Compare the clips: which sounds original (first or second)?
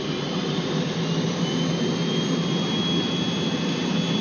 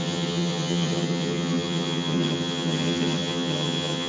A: first